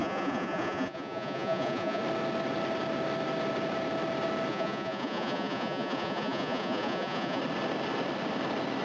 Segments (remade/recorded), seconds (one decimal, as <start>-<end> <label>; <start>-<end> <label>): 0.0-2.0 remade; 2.0-4.5 recorded; 4.5-7.4 remade; 7.4-8.8 recorded